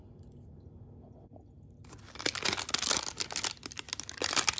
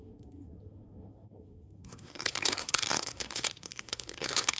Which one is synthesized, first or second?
second